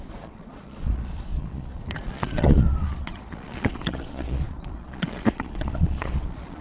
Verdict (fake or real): fake